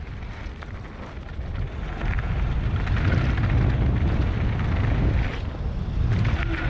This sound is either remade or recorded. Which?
recorded